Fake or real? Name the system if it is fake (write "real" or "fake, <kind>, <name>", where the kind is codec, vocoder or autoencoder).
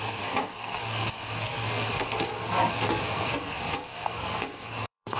fake, codec, SNAC